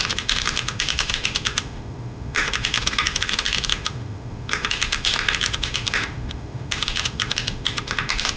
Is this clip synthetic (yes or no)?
yes